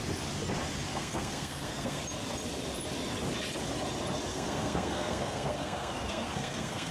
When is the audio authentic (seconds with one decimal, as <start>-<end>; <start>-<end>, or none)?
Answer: 0.0-0.9; 2.0-4.3